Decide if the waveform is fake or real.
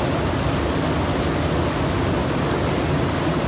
real